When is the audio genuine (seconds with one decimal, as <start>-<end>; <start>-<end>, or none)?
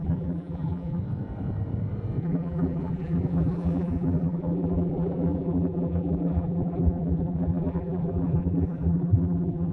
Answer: 1.0-2.2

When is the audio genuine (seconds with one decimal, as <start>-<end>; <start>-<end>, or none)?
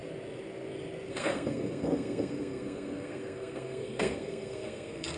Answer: 0.0-1.1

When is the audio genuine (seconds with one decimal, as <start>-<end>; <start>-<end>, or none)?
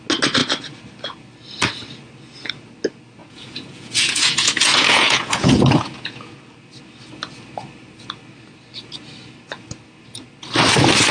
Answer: 0.0-3.2; 6.4-11.1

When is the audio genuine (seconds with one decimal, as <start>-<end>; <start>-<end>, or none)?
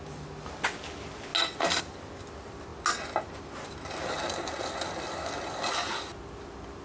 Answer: 0.0-6.8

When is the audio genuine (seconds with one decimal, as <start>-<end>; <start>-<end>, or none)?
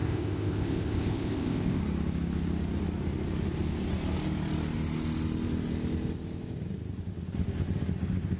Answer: 1.8-8.4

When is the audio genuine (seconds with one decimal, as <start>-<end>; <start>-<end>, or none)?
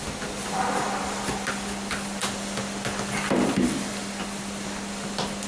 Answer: 0.0-5.5